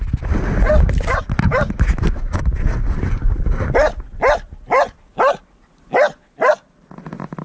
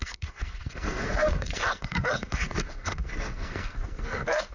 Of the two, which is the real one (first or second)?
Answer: first